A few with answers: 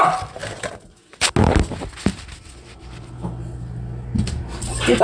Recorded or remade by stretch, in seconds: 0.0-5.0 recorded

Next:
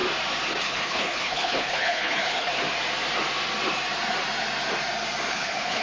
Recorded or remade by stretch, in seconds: 0.0-0.6 recorded; 0.6-2.5 remade; 2.5-5.3 recorded; 5.3-5.8 remade

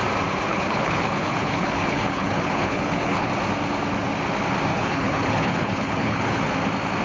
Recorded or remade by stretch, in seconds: 0.0-0.5 recorded; 0.5-3.3 remade; 3.3-4.7 recorded; 4.7-6.5 remade; 6.5-7.0 recorded

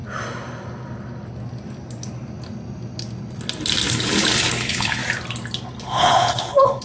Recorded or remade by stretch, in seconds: 0.0-3.9 recorded; 3.9-5.0 remade; 5.0-5.8 recorded; 5.8-6.8 remade